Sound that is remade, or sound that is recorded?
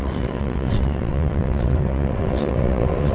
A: remade